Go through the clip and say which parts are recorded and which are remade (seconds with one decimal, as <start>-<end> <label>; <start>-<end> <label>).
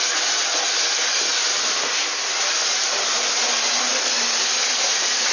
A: 0.0-5.3 recorded